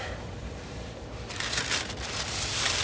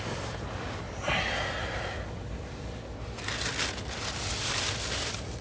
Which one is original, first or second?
second